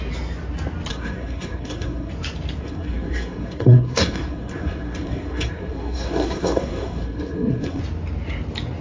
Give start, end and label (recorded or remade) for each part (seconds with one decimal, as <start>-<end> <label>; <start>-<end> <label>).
0.0-0.9 recorded; 0.9-2.1 remade; 2.1-2.6 recorded; 2.6-7.8 remade; 7.8-8.8 recorded